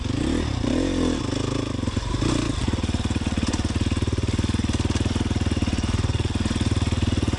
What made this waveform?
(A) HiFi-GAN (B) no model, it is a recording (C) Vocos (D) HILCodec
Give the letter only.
B